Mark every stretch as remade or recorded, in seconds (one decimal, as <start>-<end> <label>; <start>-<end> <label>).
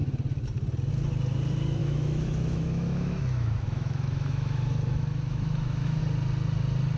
0.0-1.8 recorded; 1.8-6.0 remade; 6.0-7.0 recorded